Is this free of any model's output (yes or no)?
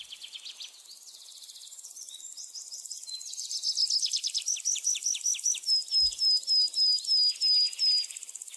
yes